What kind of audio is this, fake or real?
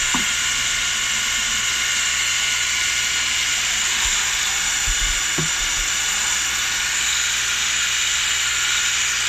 real